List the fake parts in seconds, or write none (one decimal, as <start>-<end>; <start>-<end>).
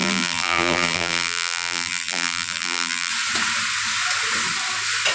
0.0-3.1